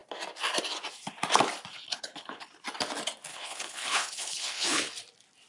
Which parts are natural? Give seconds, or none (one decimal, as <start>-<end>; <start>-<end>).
0.0-1.7; 2.5-3.3; 4.9-5.5